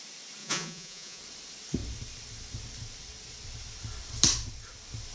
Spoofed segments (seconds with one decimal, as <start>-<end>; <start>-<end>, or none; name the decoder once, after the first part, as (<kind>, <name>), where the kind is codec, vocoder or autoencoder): 0.4-1.2 (vocoder, Vocos)